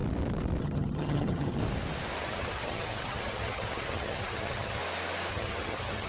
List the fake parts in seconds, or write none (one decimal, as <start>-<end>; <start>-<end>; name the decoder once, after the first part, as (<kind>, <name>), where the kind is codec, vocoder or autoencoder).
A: 0.6-1.6 (vocoder, HiFi-GAN); 2.2-4.8; 5.3-6.1